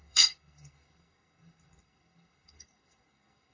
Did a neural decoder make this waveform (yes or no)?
yes